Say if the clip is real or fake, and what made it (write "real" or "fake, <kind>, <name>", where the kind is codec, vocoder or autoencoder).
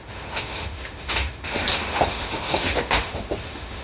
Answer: fake, autoencoder, DAC-VAE